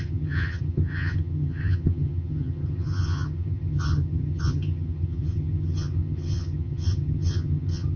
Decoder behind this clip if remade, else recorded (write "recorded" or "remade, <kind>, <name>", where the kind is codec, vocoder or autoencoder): remade, vocoder, HiFi-GAN